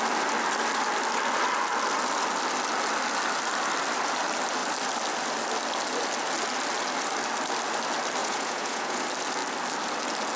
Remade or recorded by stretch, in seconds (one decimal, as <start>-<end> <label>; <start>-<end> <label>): 0.0-8.2 recorded; 8.2-9.0 remade; 9.0-10.4 recorded